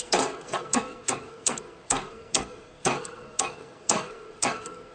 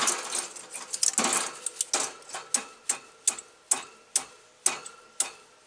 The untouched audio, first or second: second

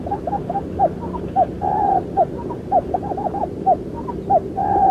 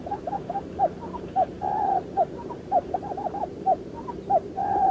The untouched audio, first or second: first